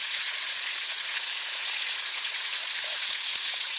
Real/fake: fake